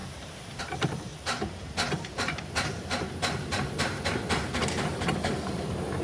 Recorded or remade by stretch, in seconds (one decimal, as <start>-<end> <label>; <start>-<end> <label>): 0.0-1.1 remade; 1.1-1.9 recorded; 1.9-6.0 remade